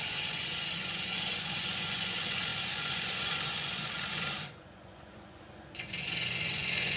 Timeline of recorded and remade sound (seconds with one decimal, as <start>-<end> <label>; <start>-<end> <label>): 0.0-7.0 remade